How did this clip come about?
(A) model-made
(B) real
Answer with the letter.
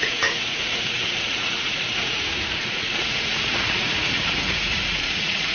A